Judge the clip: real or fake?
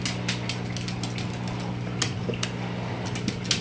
real